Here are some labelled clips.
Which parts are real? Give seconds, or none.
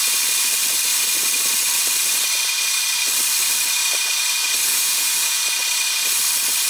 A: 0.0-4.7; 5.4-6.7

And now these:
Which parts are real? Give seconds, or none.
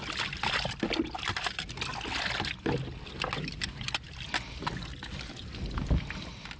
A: 0.0-6.6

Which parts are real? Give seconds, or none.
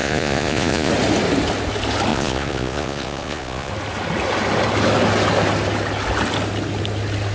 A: 0.9-2.1; 3.7-7.3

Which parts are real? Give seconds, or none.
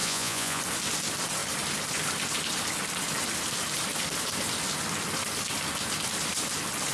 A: 0.6-6.9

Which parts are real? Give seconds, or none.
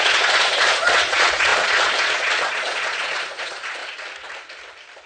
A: 3.8-5.1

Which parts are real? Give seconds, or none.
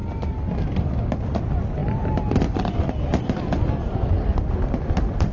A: 0.0-5.3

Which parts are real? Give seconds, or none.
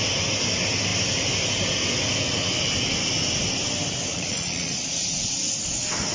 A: 0.0-4.1; 5.0-6.1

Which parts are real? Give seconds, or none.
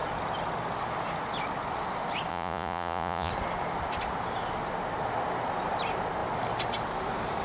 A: 0.0-2.3; 3.3-7.4